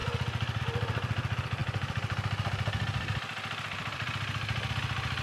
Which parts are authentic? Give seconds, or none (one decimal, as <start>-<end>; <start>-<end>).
0.0-1.6; 4.7-5.2